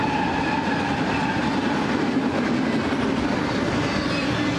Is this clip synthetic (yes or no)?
no